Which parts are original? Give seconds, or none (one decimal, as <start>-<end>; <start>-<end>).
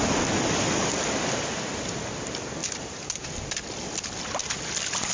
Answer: 0.0-5.1